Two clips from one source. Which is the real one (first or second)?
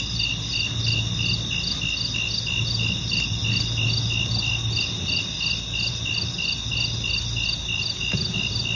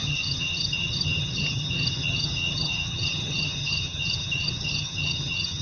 first